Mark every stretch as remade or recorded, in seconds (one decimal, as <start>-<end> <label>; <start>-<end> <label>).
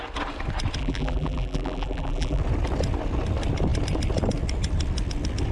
0.0-0.8 recorded; 0.8-2.4 remade; 2.4-5.5 recorded